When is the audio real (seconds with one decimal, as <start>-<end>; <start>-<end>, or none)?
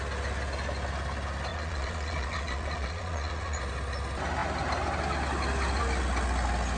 0.0-1.5; 3.6-6.8